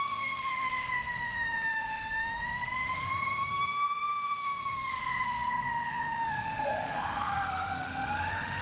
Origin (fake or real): fake